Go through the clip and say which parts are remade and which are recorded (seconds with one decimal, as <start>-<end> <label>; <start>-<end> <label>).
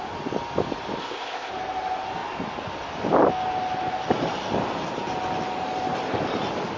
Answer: 0.0-1.0 recorded; 1.0-1.5 remade; 1.5-6.8 recorded